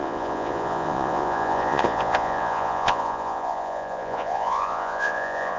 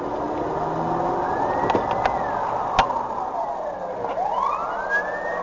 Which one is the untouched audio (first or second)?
second